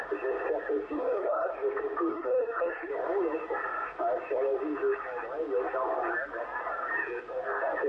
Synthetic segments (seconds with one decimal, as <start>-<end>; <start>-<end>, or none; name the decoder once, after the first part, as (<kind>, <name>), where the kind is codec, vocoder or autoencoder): 0.9-1.5 (codec, SNAC); 2.1-2.9